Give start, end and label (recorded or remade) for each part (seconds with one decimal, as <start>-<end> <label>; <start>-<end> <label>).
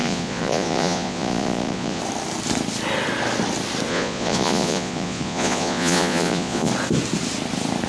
0.0-2.0 remade; 2.0-3.9 recorded; 3.9-6.7 remade; 6.7-7.9 recorded